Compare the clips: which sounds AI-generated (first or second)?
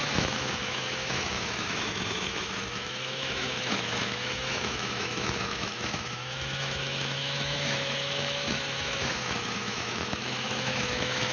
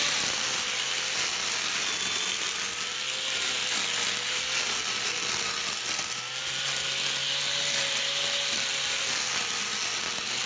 first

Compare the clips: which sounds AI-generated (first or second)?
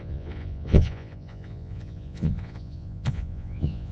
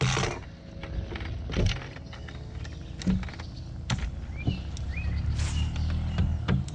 first